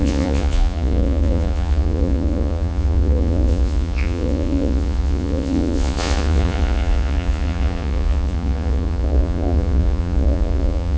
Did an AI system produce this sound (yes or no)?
yes